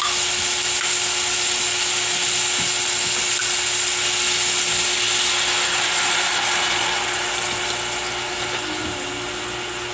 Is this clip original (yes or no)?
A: yes